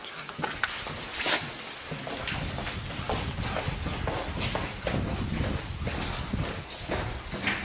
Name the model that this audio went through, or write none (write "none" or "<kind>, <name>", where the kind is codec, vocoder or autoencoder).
none